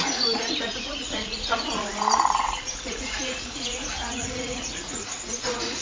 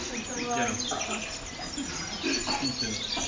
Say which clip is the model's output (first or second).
first